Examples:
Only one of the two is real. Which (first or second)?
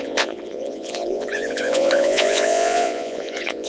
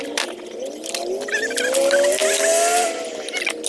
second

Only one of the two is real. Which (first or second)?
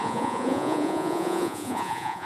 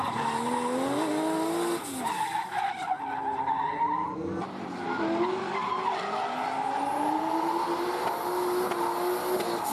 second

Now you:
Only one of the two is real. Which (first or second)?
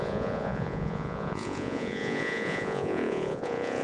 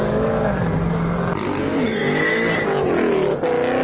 second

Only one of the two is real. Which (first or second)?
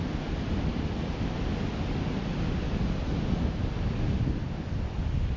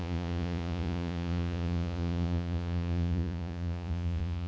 first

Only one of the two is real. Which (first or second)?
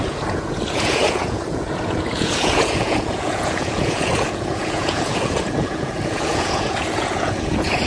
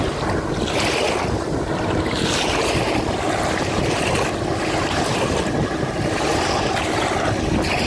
second